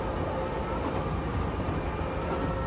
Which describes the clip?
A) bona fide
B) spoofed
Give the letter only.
A